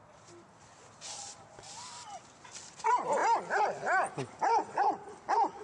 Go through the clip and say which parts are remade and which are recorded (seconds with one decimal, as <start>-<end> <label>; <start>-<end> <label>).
0.0-5.6 recorded